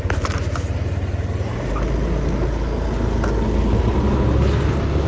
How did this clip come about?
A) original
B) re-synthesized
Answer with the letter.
A